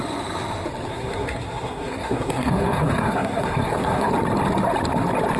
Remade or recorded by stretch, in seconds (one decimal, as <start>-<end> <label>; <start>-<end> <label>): 0.0-0.9 recorded; 0.9-4.1 remade; 4.1-5.4 recorded